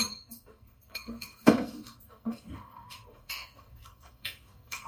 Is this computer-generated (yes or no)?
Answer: yes